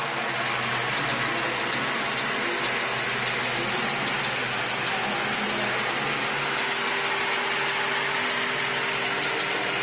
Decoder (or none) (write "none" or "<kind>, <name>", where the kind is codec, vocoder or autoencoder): none